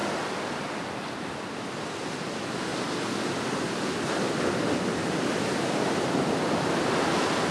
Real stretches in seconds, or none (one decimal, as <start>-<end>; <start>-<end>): 0.0-7.5